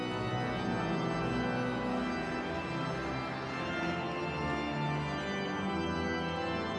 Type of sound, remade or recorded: recorded